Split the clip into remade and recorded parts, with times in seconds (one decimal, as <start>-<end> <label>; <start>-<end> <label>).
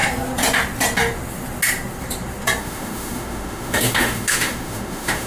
0.0-2.6 recorded; 2.6-5.3 remade